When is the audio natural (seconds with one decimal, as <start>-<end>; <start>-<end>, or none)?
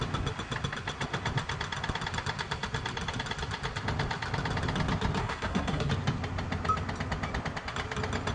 0.0-5.2; 5.9-8.3